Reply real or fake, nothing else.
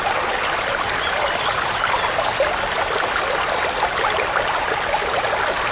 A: real